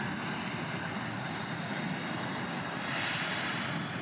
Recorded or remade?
recorded